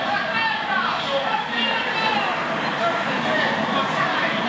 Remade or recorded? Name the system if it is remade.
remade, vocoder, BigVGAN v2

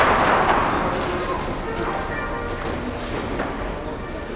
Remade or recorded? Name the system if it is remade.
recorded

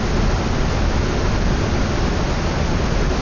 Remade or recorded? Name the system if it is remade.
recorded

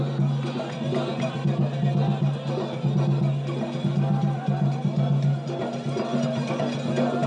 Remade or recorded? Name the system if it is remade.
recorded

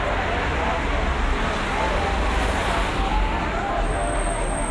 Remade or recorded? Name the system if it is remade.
recorded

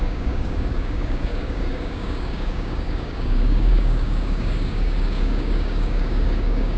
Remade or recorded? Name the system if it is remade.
remade, codec, DAC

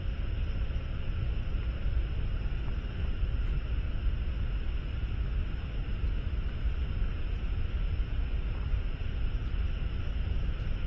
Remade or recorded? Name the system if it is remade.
recorded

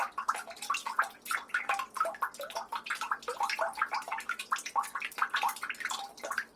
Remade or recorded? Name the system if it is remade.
remade, vocoder, BigVGAN v2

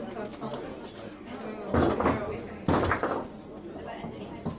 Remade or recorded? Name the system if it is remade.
recorded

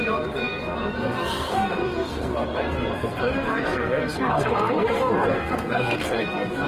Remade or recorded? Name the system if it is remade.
remade, codec, SNAC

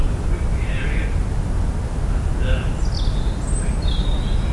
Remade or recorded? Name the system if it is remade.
recorded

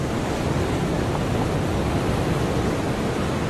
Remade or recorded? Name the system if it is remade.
recorded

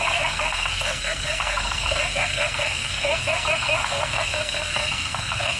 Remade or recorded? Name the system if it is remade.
remade, codec, SNAC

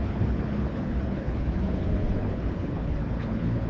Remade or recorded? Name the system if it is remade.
remade, codec, HILCodec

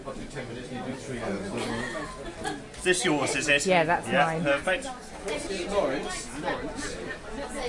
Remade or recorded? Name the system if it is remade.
recorded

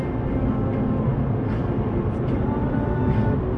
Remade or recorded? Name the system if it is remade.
recorded